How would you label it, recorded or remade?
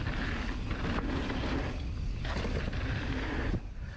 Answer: recorded